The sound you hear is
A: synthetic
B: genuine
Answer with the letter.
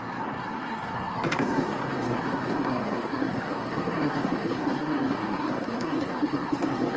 A